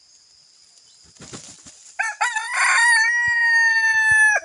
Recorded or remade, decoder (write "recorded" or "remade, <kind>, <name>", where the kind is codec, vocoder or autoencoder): recorded